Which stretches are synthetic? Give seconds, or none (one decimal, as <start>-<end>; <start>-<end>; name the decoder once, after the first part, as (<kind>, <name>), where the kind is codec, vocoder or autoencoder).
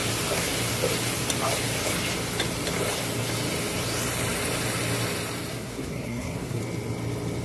5.5-6.6 (codec, SNAC)